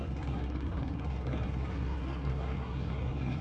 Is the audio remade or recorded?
remade